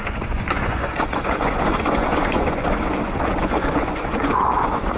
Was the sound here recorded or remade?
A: remade